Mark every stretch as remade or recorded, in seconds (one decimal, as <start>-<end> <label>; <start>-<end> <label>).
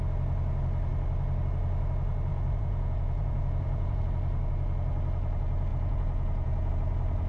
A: 0.0-2.3 recorded; 2.3-4.0 remade; 4.0-5.7 recorded; 5.7-6.7 remade; 6.7-7.3 recorded